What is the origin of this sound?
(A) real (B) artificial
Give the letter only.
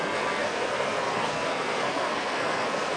B